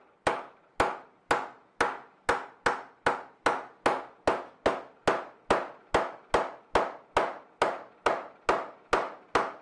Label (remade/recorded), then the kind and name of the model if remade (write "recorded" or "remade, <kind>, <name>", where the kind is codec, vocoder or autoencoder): recorded